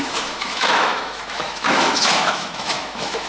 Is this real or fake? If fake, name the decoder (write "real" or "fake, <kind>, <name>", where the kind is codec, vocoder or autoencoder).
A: fake, autoencoder, DAC-VAE